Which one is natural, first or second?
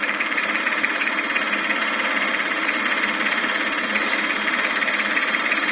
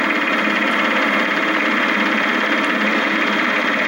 second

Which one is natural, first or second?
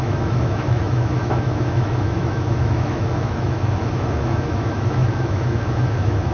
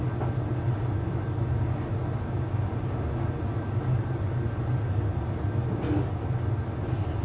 second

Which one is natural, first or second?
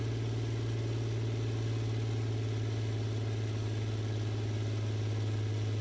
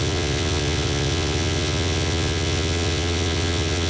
first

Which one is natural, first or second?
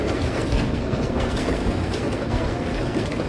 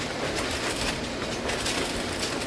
second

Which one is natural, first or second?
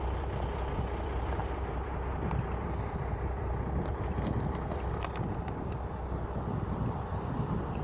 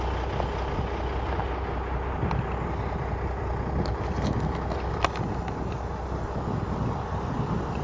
second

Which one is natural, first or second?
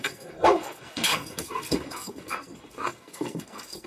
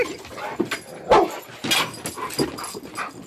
second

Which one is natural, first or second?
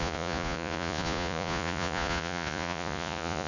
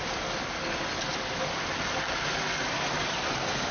second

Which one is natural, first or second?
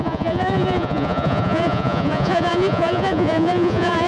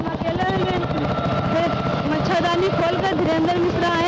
second